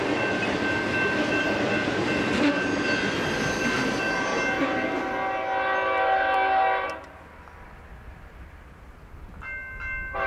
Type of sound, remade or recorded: recorded